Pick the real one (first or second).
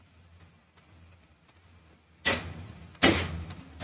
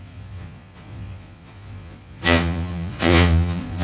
first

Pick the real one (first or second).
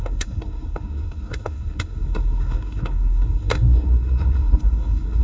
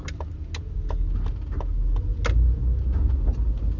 second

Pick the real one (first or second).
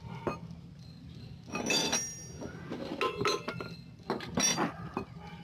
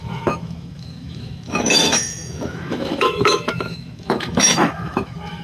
first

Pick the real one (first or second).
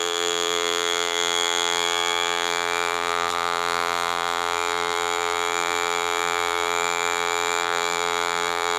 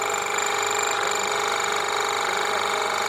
second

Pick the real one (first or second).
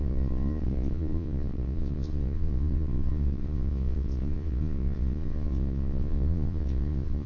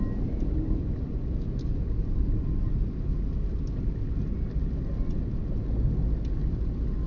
second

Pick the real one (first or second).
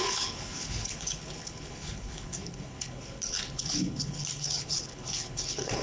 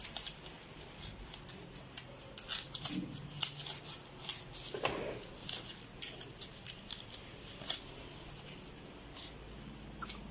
second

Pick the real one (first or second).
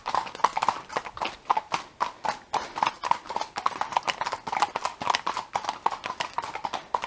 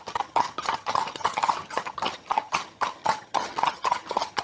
first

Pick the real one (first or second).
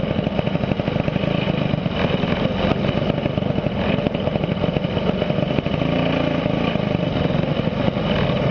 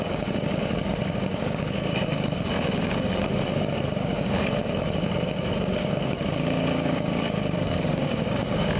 first